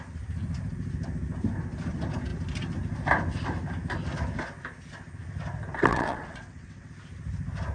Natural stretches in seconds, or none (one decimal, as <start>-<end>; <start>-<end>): 0.0-5.9; 6.9-7.7